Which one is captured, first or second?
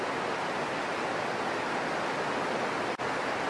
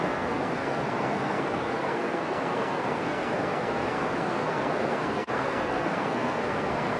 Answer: first